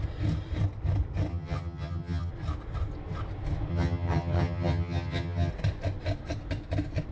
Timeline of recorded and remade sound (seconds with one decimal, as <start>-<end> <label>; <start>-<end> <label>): 0.0-1.3 recorded; 1.3-2.3 remade; 2.3-3.7 recorded; 3.7-5.5 remade; 5.5-7.1 recorded